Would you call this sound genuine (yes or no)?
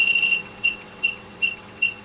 no